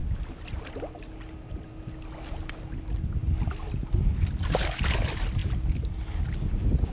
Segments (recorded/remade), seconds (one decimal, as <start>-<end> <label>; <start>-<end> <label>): 0.0-6.9 recorded